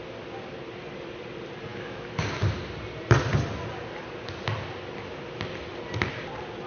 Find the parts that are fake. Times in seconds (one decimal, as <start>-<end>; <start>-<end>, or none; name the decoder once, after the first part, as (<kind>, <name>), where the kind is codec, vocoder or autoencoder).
1.7-2.2 (autoencoder, DAC-VAE)